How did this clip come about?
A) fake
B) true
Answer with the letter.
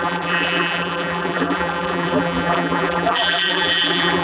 A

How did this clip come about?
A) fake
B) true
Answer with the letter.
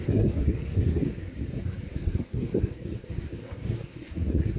A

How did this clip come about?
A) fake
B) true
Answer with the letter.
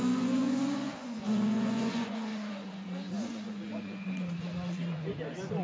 A